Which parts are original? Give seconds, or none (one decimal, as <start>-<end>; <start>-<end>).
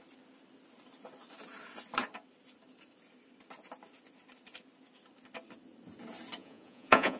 0.0-6.4